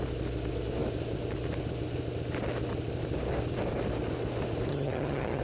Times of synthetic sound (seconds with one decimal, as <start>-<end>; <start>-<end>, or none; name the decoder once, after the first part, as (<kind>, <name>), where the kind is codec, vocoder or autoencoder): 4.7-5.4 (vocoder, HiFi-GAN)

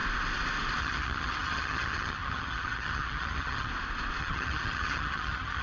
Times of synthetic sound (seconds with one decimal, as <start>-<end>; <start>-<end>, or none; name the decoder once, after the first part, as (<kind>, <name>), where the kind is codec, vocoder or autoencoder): 0.8-3.7 (vocoder, HiFi-GAN); 4.2-5.6

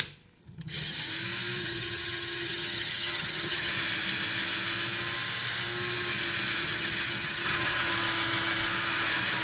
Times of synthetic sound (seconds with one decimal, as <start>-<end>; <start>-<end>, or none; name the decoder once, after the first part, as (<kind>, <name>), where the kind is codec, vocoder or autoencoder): 0.4-1.1 (vocoder, HiFi-GAN); 1.6-3.7; 6.6-7.9